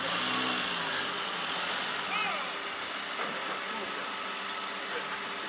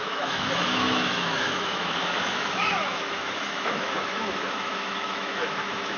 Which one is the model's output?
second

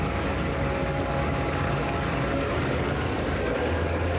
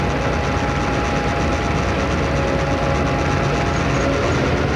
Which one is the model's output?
first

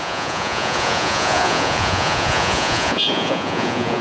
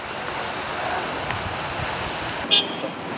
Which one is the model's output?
first